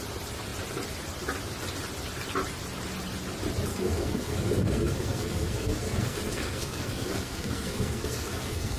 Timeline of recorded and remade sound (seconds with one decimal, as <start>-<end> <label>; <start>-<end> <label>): 0.0-3.7 recorded; 3.7-8.8 remade